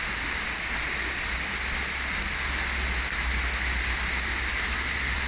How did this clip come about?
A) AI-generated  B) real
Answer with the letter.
B